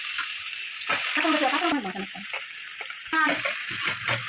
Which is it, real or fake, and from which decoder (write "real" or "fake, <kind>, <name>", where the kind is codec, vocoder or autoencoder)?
real